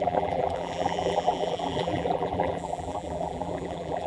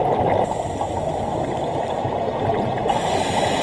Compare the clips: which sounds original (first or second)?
second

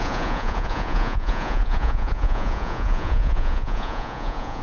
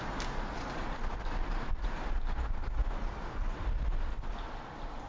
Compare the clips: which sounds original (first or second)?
second